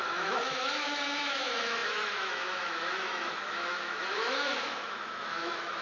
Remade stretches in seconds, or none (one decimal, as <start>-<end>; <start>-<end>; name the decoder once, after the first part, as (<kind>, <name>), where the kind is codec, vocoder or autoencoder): 0.0-5.8 (autoencoder, DAC-VAE)